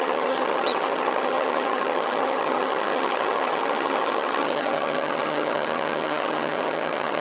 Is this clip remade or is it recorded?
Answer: remade